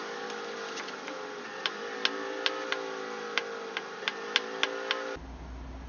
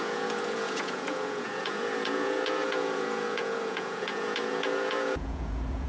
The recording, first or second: first